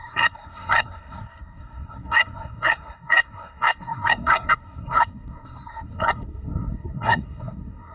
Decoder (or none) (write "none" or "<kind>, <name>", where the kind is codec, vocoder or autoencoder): codec, SNAC